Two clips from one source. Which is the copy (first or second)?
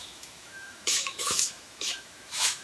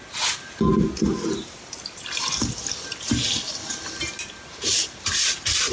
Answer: first